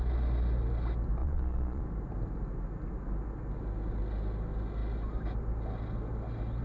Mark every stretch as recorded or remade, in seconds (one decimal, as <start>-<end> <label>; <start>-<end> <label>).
0.0-1.2 recorded; 1.2-1.8 remade; 1.8-6.6 recorded